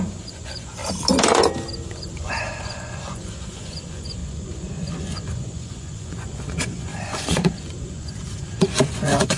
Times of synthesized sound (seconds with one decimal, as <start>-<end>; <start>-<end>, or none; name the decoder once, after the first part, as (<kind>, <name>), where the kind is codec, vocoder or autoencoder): 0.0-0.8 (vocoder, Vocos); 1.9-9.4